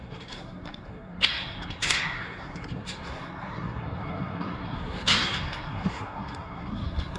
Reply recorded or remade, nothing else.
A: remade